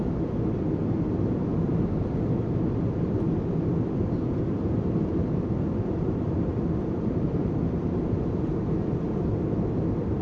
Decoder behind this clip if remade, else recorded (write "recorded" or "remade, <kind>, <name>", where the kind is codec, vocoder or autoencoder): recorded